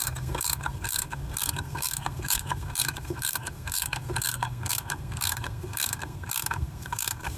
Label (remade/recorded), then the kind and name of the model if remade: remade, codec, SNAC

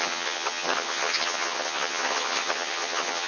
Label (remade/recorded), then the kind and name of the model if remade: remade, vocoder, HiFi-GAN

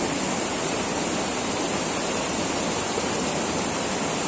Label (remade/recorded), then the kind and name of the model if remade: recorded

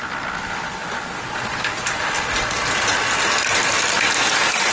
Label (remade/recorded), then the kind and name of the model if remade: recorded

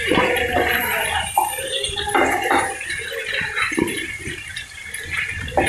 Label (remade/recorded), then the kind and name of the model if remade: remade, vocoder, BigVGAN v2